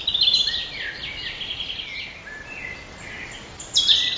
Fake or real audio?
fake